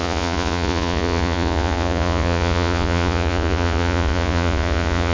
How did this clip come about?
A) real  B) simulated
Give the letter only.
B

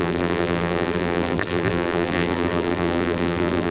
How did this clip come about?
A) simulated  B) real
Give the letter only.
A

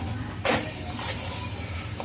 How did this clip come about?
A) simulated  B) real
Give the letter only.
B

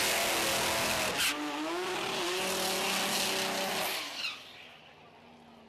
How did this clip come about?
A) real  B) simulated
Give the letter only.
A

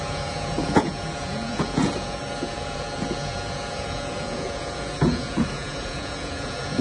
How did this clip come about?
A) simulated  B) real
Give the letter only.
A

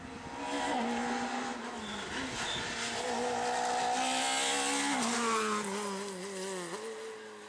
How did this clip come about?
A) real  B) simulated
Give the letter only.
A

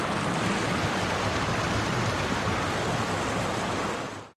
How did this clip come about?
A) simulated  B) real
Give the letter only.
B